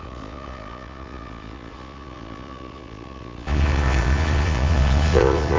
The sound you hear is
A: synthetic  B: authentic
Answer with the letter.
A